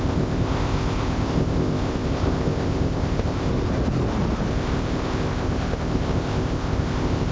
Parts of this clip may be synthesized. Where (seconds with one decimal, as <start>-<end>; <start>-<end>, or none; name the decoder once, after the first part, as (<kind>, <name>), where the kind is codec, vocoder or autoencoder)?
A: 0.0-3.5 (codec, ZipCodec); 4.5-7.3